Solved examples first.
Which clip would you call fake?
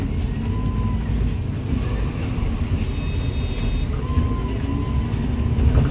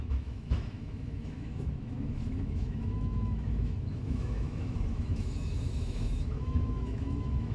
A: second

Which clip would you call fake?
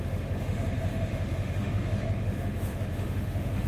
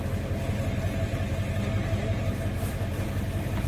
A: first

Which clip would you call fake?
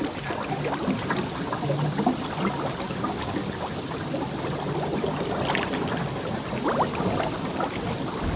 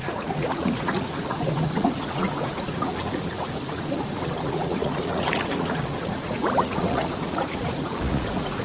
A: second